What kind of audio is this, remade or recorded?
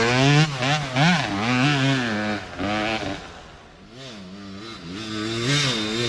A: recorded